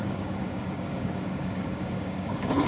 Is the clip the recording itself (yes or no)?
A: no